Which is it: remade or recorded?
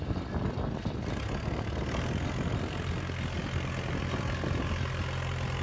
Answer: recorded